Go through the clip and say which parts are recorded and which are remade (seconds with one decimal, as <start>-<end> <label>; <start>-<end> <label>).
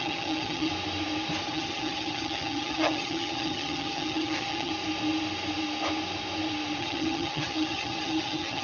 0.0-0.7 remade; 0.7-1.5 recorded; 1.5-4.7 remade; 4.7-6.8 recorded; 6.8-8.6 remade